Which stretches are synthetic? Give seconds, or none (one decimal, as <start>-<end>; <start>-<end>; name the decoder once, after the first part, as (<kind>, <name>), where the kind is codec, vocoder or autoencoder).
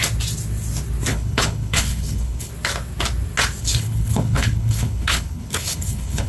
1.1-2.5 (codec, HILCodec); 3.6-6.3